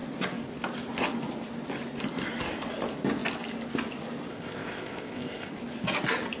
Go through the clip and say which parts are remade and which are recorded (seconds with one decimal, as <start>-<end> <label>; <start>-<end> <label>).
0.0-4.3 recorded; 4.3-5.5 remade; 5.5-6.4 recorded